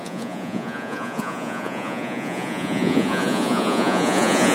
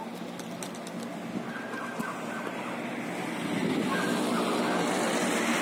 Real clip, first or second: second